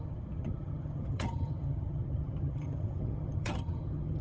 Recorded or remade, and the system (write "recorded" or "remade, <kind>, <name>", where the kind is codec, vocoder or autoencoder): remade, vocoder, HiFi-GAN